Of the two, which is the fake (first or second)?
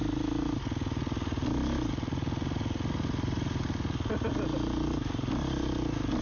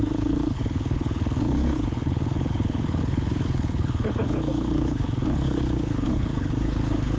second